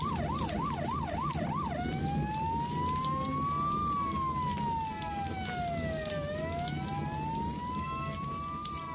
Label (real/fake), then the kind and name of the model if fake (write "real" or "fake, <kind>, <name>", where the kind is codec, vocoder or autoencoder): real